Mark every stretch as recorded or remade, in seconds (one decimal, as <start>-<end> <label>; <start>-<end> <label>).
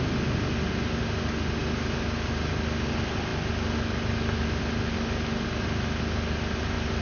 0.0-7.0 recorded